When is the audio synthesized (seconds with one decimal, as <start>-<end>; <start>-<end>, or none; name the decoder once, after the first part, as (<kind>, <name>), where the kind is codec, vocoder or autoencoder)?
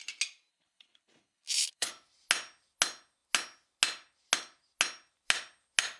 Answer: 0.5-1.9 (codec, HILCodec)